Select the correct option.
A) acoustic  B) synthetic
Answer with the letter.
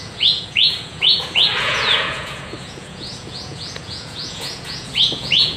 B